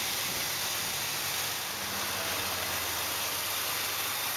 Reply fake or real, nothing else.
real